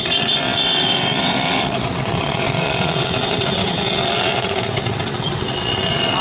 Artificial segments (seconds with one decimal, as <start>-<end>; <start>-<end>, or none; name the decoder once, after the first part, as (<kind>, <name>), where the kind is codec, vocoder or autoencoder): 0.0-6.2 (vocoder, WaveNeXt)